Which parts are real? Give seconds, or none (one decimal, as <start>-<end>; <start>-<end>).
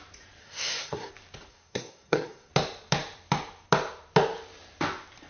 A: 0.0-0.4; 1.1-1.5; 2.5-5.3